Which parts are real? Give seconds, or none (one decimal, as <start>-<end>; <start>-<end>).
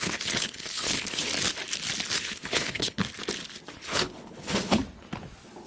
1.3-2.2; 3.0-3.7; 4.8-5.7